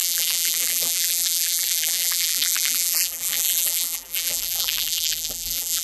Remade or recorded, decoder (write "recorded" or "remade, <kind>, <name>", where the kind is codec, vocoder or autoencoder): remade, vocoder, BigVGAN v2